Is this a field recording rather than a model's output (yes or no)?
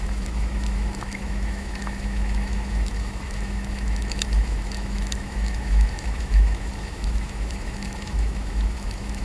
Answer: no